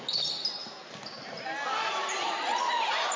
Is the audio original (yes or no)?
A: yes